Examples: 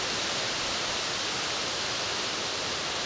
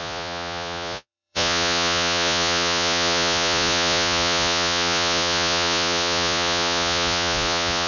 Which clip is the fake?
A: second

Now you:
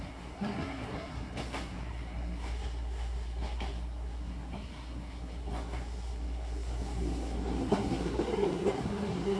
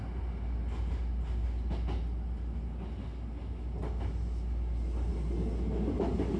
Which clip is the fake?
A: first